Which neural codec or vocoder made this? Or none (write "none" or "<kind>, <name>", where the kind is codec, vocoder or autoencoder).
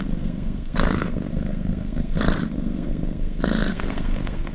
codec, SNAC